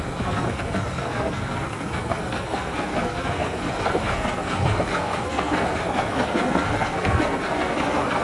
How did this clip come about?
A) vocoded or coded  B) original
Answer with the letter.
A